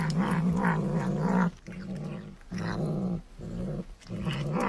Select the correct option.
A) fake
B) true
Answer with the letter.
B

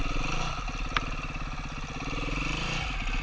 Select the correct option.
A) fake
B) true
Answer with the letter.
B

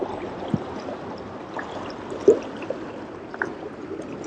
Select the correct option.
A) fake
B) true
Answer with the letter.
B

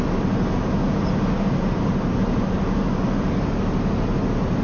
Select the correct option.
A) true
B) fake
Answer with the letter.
A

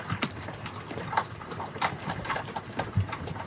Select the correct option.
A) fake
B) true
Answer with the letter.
B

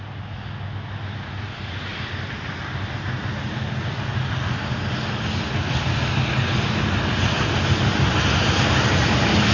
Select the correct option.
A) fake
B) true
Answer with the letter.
B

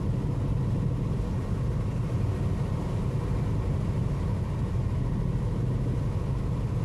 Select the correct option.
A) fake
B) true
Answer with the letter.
B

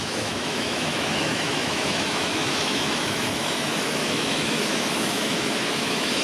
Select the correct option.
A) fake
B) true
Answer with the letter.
A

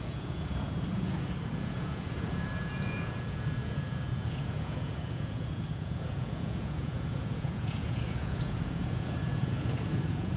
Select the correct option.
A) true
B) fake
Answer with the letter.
B